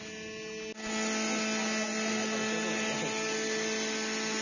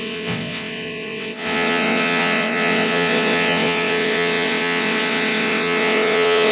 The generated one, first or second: second